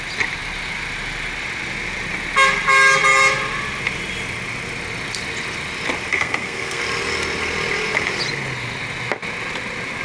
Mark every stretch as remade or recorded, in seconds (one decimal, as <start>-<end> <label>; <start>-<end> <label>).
0.0-6.1 recorded; 6.1-6.8 remade; 6.8-10.0 recorded